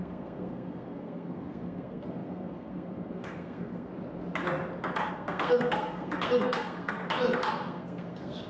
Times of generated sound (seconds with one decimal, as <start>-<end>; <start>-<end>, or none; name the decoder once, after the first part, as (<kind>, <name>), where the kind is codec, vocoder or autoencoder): 0.0-3.9 (codec, SNAC); 5.1-7.0; 7.5-8.5